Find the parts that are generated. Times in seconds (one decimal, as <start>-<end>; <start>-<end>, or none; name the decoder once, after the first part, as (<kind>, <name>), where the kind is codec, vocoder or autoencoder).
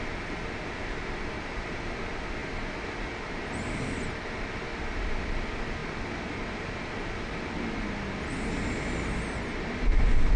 none